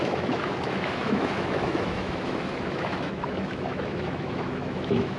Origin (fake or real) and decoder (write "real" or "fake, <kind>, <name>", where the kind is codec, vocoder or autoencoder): fake, autoencoder, DAC-VAE